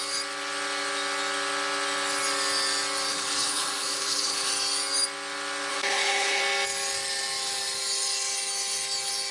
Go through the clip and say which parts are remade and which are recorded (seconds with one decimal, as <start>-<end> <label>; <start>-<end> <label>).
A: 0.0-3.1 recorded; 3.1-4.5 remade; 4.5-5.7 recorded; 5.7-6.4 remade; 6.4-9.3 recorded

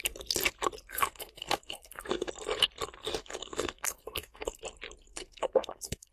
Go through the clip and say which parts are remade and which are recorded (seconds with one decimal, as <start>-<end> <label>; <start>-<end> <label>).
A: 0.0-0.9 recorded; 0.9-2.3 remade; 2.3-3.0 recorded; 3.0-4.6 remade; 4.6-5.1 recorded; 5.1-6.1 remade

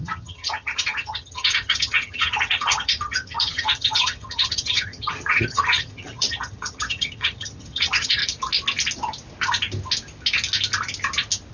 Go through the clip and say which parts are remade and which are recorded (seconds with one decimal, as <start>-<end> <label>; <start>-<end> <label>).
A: 0.0-8.2 remade; 8.2-11.5 recorded